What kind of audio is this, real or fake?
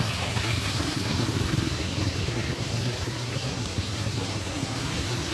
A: fake